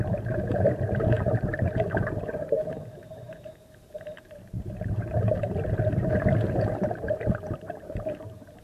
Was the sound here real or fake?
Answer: fake